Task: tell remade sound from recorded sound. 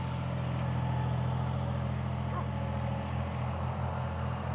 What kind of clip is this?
recorded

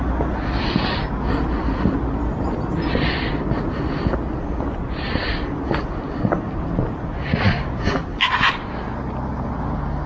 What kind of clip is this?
recorded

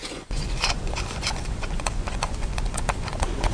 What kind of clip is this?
remade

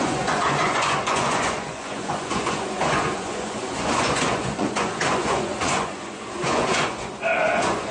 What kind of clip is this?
remade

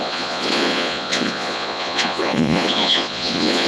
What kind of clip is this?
remade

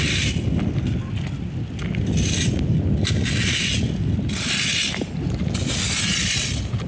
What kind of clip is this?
recorded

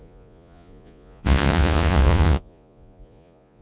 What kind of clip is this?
remade